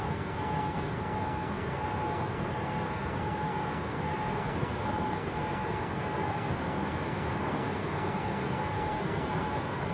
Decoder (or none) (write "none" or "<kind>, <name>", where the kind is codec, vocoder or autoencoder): codec, SNAC